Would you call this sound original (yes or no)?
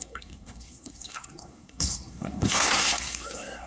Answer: no